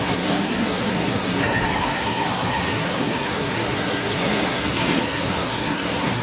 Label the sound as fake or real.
fake